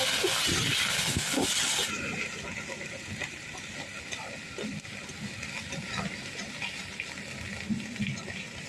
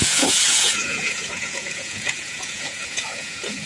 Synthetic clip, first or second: second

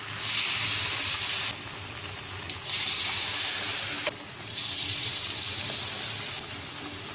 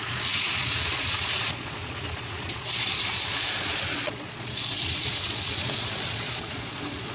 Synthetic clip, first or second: second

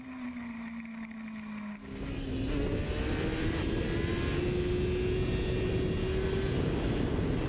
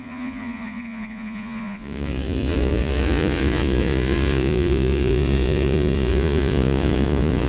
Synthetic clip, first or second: second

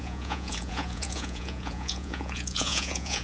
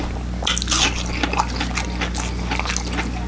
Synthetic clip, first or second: first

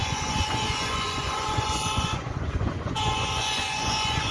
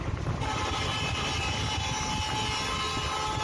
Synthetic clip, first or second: first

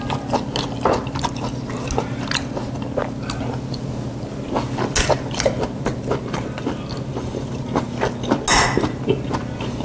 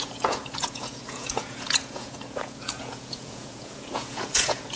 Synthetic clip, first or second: second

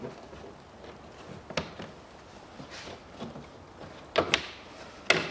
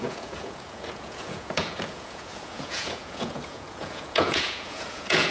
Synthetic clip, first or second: second